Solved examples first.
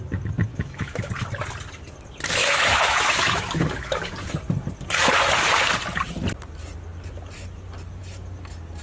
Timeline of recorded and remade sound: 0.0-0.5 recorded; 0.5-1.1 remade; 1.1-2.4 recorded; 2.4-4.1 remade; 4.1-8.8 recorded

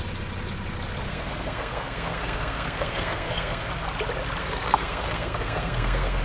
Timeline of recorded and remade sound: 0.0-1.1 recorded; 1.1-3.8 remade; 3.8-4.4 recorded; 4.4-6.2 remade

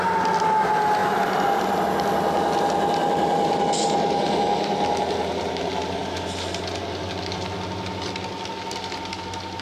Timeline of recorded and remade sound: 0.0-9.6 recorded

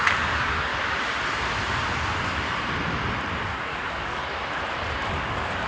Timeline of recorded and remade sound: 0.0-0.7 remade; 0.7-3.5 recorded; 3.5-4.2 remade; 4.2-5.1 recorded; 5.1-5.7 remade

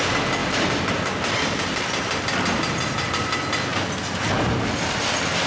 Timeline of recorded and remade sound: 0.0-0.4 recorded; 0.4-3.1 remade; 3.1-5.5 recorded